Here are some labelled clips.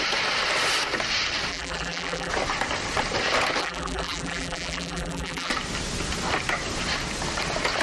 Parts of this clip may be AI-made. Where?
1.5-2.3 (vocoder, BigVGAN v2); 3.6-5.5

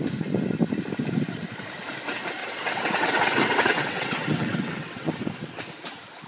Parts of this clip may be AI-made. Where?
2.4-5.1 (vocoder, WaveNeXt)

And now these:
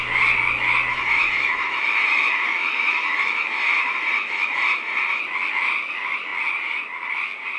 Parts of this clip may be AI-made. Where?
0.9-5.2 (autoencoder, DAC-VAE)

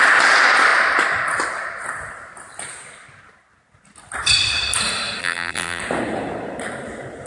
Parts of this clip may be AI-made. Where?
5.2-5.8 (vocoder, BigVGAN v2)

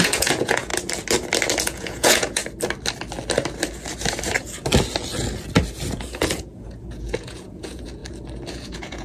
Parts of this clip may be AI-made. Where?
0.0-0.7 (vocoder, Vocos); 1.6-2.4; 5.9-8.0; 8.5-9.0

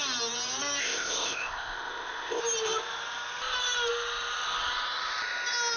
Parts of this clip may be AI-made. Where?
0.8-2.4 (codec, ZipCodec)